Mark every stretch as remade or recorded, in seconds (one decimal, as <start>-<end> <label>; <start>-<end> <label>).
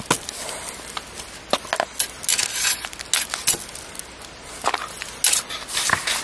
0.0-6.2 recorded